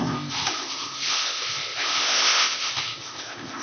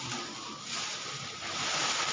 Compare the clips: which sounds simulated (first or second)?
first